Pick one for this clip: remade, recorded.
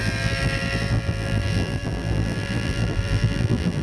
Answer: remade